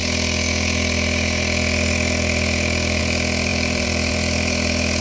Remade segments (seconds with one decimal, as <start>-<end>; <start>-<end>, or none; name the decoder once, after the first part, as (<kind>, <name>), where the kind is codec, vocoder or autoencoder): 3.5-4.1 (vocoder, BigVGAN v2)